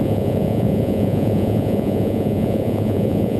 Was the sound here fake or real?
fake